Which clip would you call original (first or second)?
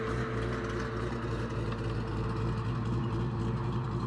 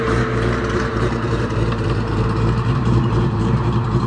first